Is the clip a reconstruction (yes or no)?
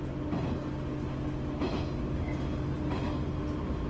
no